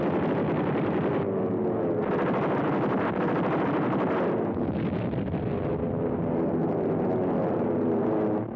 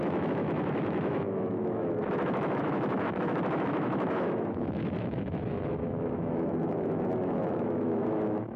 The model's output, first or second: second